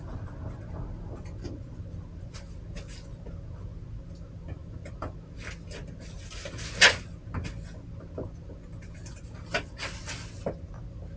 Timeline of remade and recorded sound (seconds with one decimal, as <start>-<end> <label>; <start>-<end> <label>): 0.0-11.2 recorded